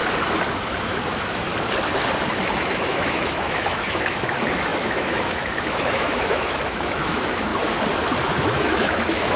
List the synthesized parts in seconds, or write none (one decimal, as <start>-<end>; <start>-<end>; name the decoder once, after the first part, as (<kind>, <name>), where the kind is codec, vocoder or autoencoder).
0.8-1.5 (autoencoder, DAC-VAE); 2.6-7.5; 8.2-9.4

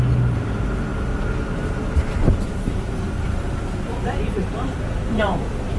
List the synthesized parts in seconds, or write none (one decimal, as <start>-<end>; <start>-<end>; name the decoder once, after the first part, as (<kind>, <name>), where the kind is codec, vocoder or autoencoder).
2.2-5.8 (vocoder, BigVGAN v2)

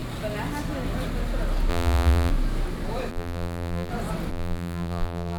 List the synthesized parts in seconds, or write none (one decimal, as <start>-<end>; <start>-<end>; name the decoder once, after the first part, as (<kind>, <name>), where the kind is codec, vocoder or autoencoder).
1.7-2.3 (vocoder, BigVGAN v2); 3.1-3.9; 4.3-5.4

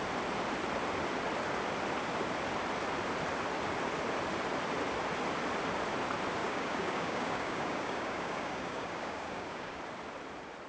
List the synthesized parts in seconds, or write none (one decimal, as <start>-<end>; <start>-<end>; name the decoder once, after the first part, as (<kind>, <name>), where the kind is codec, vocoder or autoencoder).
6.4-9.8 (codec, DAC)

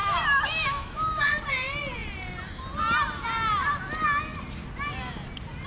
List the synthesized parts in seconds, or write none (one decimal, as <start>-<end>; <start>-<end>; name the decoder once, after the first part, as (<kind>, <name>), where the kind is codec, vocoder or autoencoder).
0.0-1.2 (autoencoder, DAC-VAE)